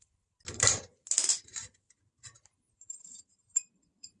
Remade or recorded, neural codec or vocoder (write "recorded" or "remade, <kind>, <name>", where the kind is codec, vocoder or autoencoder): recorded